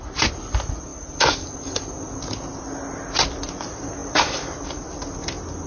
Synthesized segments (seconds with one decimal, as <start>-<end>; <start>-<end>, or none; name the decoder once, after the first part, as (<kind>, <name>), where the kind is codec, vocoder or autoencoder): 0.9-1.6 (vocoder, BigVGAN v2); 4.0-4.9